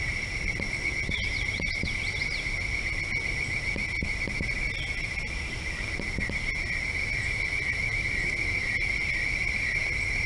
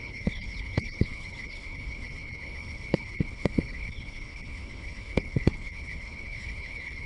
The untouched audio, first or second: first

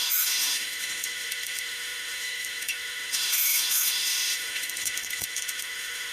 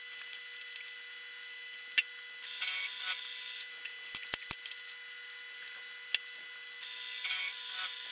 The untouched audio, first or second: second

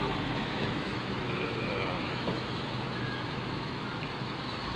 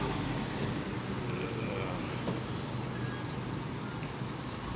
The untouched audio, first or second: second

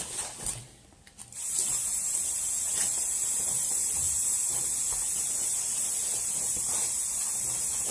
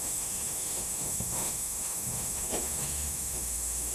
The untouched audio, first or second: first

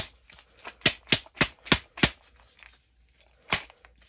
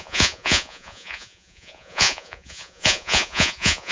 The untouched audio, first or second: first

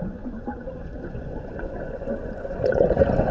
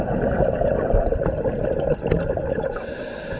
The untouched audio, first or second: second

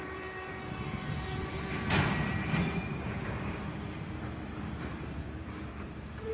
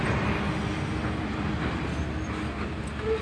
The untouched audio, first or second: second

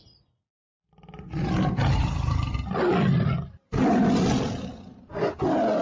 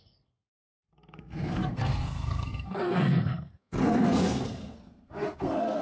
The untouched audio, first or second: first